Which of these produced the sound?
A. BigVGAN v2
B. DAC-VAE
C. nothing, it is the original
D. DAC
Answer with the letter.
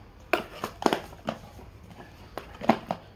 C